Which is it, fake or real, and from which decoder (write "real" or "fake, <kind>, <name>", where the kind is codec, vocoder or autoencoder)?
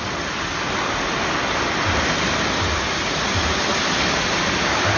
real